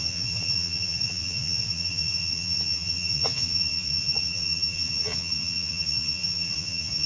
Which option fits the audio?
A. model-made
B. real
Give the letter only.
A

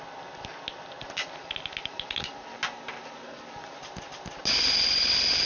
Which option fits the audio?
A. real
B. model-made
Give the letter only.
A